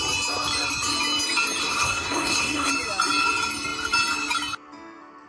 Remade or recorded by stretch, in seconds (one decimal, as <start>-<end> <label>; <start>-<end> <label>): 0.0-1.6 recorded; 1.6-2.7 remade; 2.7-5.3 recorded